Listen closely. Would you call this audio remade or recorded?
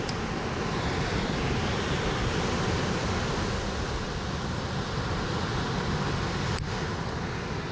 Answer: recorded